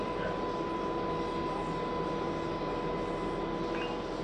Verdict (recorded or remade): recorded